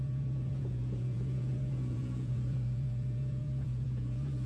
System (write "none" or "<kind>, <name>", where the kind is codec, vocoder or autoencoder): vocoder, Vocos